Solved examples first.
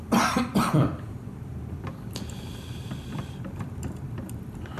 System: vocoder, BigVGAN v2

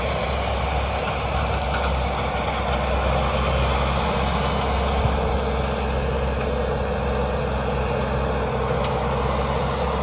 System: none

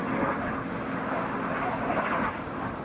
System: none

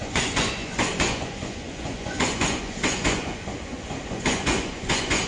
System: vocoder, Vocos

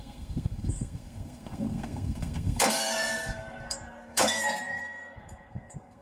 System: codec, SNAC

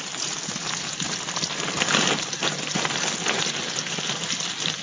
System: none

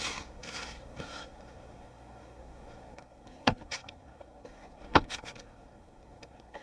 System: codec, SNAC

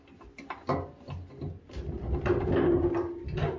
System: none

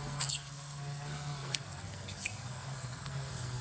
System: codec, SNAC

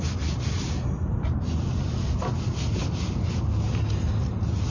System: none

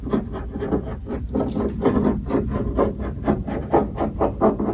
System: none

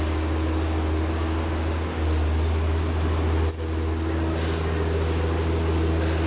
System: none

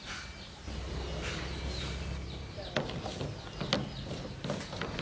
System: none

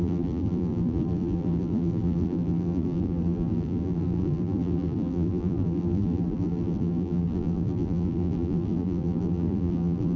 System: vocoder, BigVGAN v2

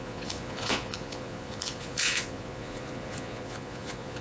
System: vocoder, Vocos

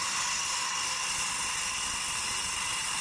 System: none